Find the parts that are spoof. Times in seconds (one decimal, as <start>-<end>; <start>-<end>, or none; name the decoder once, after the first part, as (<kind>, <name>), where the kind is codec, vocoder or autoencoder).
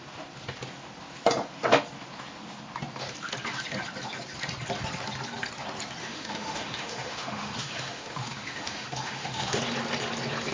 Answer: 6.0-9.6 (autoencoder, DAC-VAE)